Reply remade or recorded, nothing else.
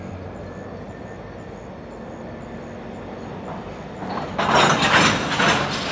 recorded